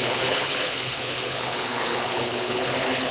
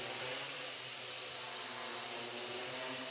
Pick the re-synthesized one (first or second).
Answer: first